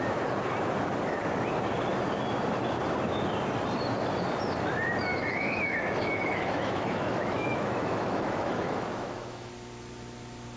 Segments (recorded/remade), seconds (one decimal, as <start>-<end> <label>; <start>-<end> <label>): 0.0-5.1 recorded; 5.1-9.5 remade; 9.5-10.6 recorded

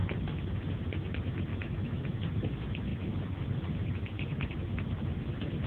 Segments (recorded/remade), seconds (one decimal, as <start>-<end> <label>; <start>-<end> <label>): 0.0-1.5 recorded; 1.5-2.2 remade; 2.2-5.7 recorded

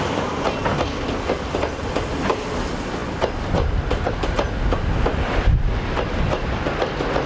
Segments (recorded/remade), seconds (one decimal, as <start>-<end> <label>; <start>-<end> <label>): 0.0-7.3 recorded

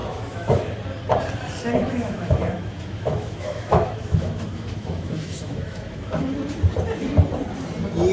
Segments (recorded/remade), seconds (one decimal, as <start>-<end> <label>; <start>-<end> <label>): 0.0-0.8 remade; 0.8-1.8 recorded; 1.8-6.2 remade; 6.2-8.1 recorded

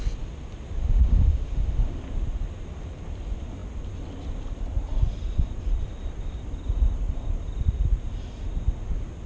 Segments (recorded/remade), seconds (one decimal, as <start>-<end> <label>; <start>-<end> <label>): 0.0-0.8 recorded; 0.8-2.0 remade; 2.0-9.3 recorded

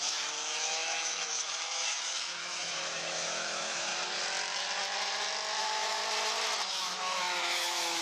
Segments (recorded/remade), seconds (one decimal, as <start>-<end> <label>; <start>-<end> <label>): 0.0-3.9 remade; 3.9-5.6 recorded; 5.6-6.0 remade; 6.0-6.7 recorded; 6.7-8.0 remade

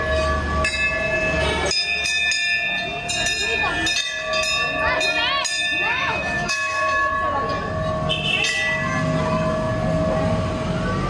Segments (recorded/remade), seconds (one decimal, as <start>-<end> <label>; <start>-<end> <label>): 0.0-5.9 recorded; 5.9-7.1 remade; 7.1-11.1 recorded